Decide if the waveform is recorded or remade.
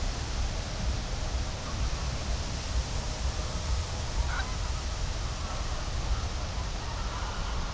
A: recorded